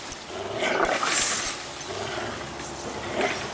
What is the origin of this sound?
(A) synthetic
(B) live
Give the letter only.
B